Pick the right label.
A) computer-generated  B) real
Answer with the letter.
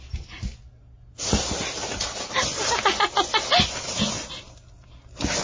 B